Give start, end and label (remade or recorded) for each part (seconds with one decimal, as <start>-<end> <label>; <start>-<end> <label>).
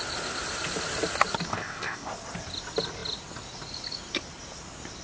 0.0-1.5 recorded; 1.5-2.1 remade; 2.1-5.0 recorded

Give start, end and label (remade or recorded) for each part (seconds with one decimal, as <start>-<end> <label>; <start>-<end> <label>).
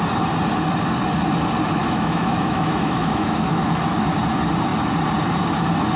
0.0-1.8 recorded; 1.8-3.8 remade; 3.8-6.0 recorded